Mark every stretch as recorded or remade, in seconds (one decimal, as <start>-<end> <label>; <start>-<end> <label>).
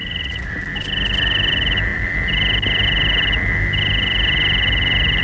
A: 0.0-0.6 remade; 0.6-5.2 recorded